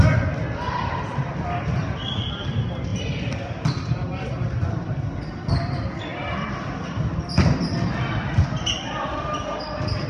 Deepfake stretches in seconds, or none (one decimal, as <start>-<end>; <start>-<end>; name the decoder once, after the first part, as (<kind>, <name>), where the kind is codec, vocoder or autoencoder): none